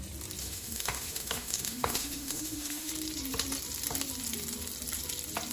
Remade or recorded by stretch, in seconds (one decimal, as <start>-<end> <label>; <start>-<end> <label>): 0.0-0.4 recorded; 0.4-2.9 remade; 2.9-5.5 recorded